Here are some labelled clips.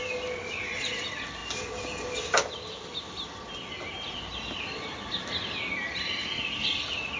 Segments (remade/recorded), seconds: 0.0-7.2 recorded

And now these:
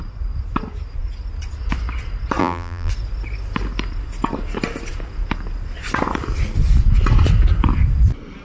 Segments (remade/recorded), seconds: 0.0-2.4 recorded; 2.4-2.9 remade; 2.9-8.4 recorded

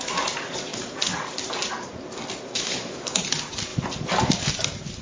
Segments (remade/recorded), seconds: 0.0-2.5 recorded; 2.5-3.2 remade; 3.2-5.0 recorded

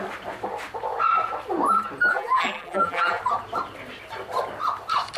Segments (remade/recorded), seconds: 0.0-2.1 recorded; 2.1-3.2 remade; 3.2-5.2 recorded